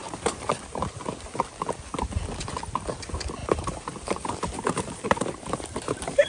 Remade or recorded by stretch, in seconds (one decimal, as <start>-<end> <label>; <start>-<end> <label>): 0.0-0.5 remade; 0.5-3.4 recorded; 3.4-6.3 remade